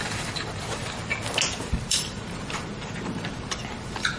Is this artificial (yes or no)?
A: yes